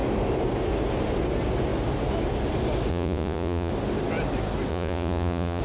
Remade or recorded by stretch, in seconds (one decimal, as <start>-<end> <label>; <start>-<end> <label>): 0.0-2.9 recorded; 2.9-3.7 remade; 3.7-4.7 recorded; 4.7-5.6 remade